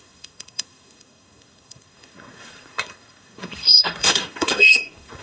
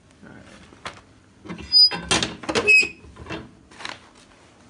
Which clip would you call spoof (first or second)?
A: first